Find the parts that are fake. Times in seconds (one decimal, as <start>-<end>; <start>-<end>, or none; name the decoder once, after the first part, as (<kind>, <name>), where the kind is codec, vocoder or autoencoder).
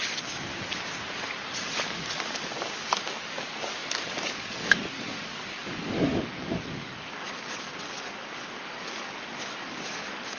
0.0-0.5 (codec, DAC); 1.5-10.4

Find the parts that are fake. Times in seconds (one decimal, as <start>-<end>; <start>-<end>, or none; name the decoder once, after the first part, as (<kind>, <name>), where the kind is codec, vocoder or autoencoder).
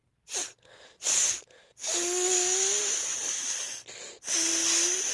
2.8-4.3 (vocoder, BigVGAN v2)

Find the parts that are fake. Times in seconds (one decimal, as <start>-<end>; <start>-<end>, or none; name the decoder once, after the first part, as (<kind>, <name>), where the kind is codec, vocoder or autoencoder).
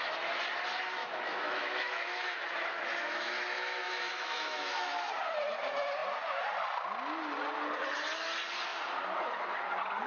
1.0-5.1 (autoencoder, DAC-VAE)